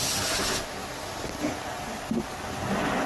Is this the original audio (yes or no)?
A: yes